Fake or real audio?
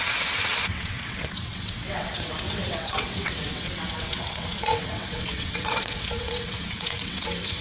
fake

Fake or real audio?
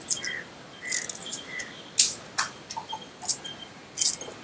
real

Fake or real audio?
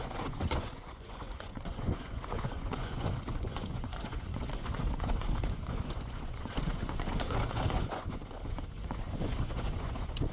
fake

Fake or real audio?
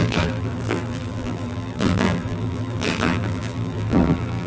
fake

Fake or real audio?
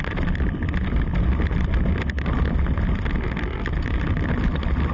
real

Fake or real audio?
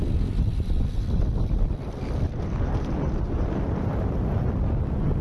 real